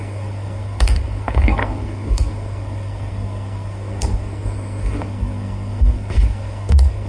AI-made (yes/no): yes